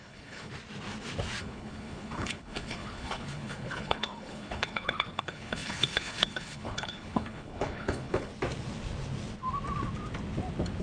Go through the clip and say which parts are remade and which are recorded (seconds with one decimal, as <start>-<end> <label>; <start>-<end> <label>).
0.0-0.5 remade; 0.5-1.4 recorded; 1.4-8.3 remade; 8.3-10.8 recorded